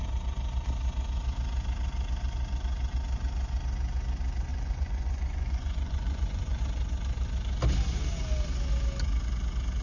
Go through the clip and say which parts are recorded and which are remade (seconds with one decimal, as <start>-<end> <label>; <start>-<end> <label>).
0.0-4.5 recorded; 4.5-6.6 remade; 6.6-9.8 recorded